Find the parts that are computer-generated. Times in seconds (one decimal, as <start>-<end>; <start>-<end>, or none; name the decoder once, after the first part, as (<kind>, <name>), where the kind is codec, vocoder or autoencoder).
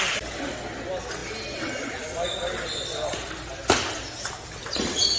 none